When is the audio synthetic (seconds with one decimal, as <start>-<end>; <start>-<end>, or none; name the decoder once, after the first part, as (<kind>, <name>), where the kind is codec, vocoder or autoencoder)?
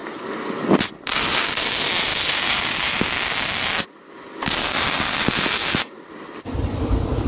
none